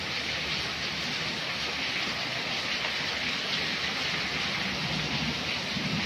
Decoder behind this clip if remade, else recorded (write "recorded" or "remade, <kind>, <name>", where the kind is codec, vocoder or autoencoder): recorded